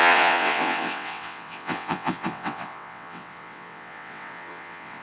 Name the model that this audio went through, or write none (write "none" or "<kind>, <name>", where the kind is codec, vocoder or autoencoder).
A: vocoder, WaveNeXt